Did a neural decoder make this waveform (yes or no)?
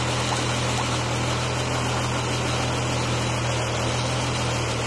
no